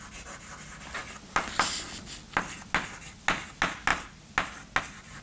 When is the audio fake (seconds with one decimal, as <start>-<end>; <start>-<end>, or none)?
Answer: none

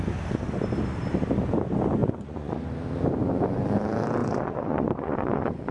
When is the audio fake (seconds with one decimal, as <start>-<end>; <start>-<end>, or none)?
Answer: 2.0-2.6; 4.2-5.7

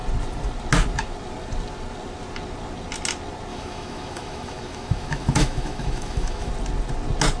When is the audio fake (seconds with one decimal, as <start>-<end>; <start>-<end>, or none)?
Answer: 3.5-6.5

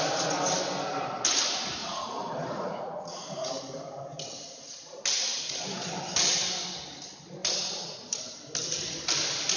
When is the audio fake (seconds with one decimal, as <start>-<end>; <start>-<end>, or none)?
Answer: 1.8-3.5

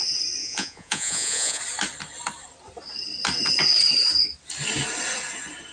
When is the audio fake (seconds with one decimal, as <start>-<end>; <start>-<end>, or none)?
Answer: 0.4-1.6